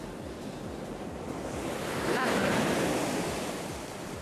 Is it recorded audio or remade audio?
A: recorded